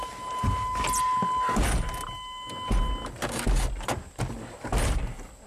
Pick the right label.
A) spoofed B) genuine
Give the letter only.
B